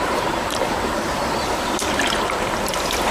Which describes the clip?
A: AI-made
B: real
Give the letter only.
B